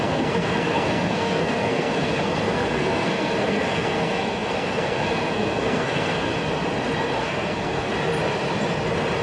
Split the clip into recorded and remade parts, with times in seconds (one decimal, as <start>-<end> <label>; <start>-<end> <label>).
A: 0.0-6.3 remade; 6.3-7.2 recorded; 7.2-7.9 remade; 7.9-9.2 recorded